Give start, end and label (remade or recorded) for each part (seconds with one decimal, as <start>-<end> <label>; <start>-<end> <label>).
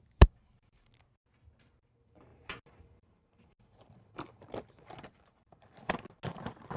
0.0-2.3 recorded; 2.3-5.9 remade; 5.9-6.8 recorded